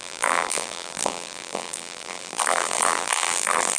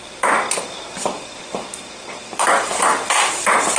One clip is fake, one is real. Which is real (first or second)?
second